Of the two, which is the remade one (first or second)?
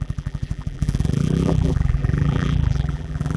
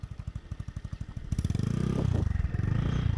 first